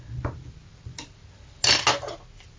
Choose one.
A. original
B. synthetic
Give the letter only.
A